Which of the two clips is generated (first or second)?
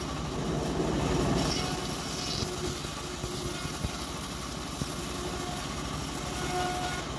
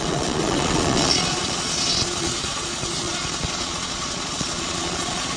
second